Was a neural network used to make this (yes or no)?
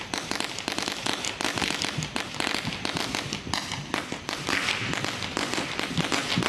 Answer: no